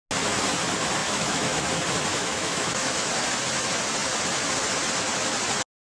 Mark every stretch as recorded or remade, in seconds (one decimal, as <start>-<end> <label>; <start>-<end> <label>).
0.0-1.0 recorded; 1.0-1.6 remade; 1.6-2.1 recorded; 2.1-3.1 remade; 3.1-5.8 recorded